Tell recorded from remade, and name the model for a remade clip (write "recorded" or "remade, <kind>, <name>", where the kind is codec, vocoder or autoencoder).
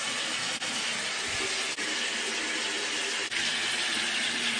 recorded